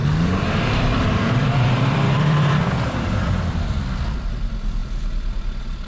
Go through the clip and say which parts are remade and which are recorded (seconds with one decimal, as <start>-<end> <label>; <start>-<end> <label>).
0.0-4.8 remade; 4.8-5.4 recorded; 5.4-5.9 remade